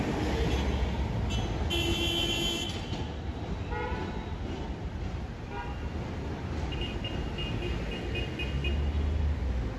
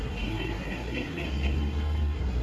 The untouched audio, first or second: first